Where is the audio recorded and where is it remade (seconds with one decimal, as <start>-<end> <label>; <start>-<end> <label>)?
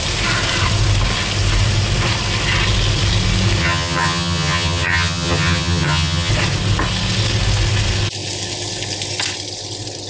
0.0-3.6 recorded; 3.6-6.3 remade; 6.3-10.1 recorded